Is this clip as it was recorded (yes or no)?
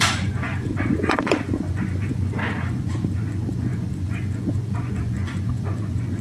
no